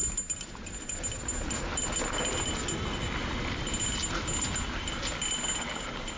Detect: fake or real real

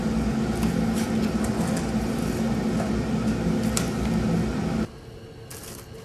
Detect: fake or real real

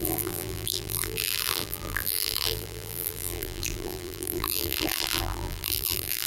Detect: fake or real fake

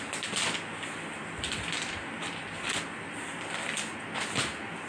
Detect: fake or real real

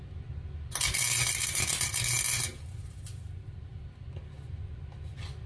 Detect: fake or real real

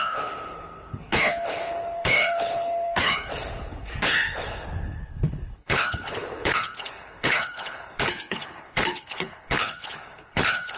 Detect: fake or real fake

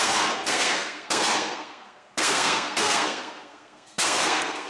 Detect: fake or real fake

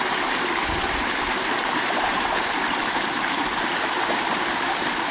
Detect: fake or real fake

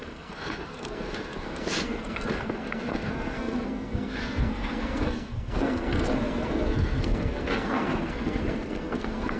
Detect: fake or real fake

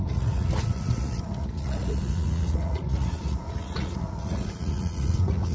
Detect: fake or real fake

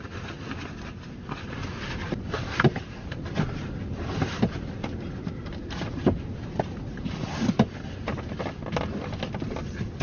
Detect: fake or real real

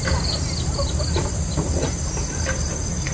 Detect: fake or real real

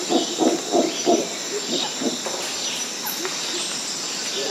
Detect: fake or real real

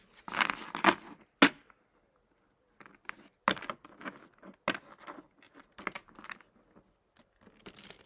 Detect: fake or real real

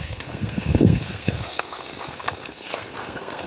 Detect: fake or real fake